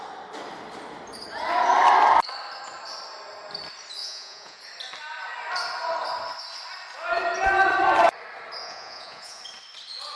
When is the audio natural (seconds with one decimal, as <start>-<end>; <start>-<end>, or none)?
0.0-4.0; 4.6-8.6; 9.4-10.2